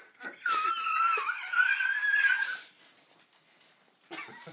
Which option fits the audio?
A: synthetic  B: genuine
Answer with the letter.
B